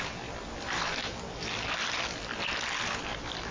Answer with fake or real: real